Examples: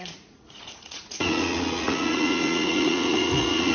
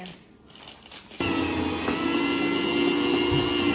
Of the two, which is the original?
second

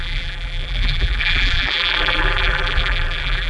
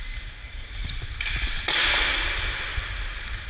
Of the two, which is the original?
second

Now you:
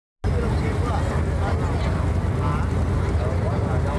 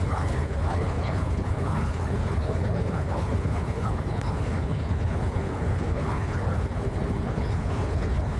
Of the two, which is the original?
first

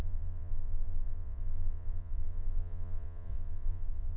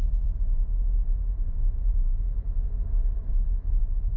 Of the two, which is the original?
second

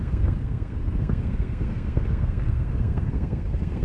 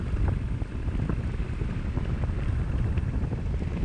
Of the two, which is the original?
second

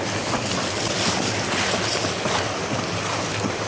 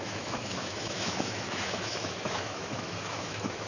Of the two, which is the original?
first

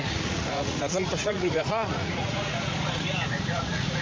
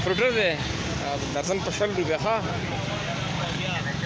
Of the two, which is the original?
second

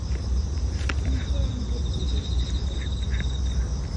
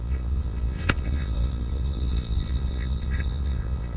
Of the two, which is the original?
first